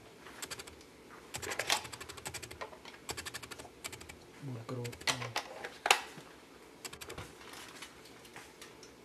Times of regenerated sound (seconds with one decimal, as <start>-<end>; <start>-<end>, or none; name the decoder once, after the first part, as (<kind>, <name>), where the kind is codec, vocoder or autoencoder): none